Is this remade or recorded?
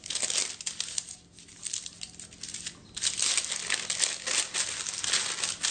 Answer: recorded